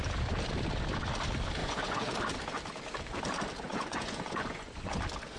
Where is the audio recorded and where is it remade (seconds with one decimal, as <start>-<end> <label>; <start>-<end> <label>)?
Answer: 0.0-1.6 recorded; 1.6-2.1 remade; 2.1-3.7 recorded; 3.7-5.0 remade; 5.0-5.4 recorded

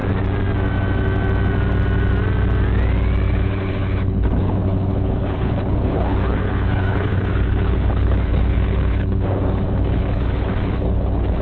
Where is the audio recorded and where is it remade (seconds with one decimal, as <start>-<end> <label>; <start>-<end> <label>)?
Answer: 0.0-3.3 recorded; 3.3-11.4 remade

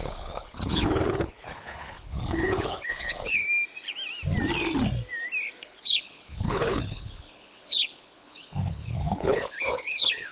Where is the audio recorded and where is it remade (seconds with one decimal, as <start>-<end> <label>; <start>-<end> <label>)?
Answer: 0.0-3.4 remade; 3.4-5.6 recorded; 5.6-10.3 remade